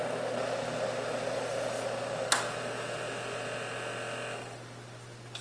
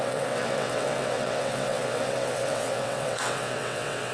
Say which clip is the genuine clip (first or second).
first